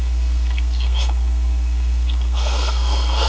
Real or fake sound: fake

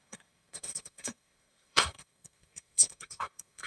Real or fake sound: fake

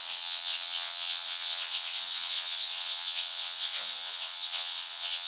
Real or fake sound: fake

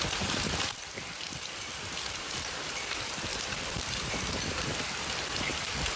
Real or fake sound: fake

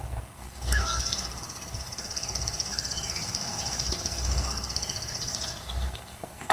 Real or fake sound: fake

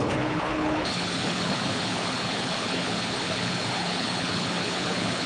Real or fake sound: fake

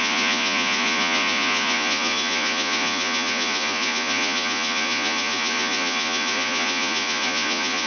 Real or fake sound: fake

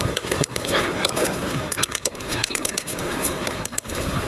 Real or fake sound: fake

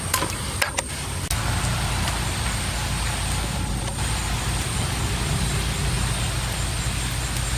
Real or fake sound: real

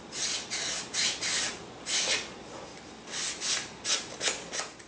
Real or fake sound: real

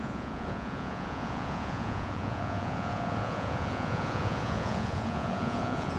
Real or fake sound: fake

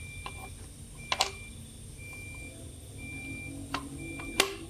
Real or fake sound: real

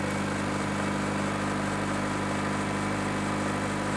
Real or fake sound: real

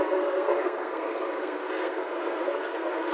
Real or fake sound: fake